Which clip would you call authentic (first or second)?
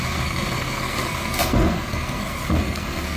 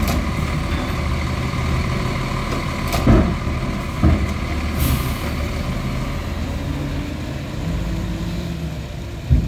second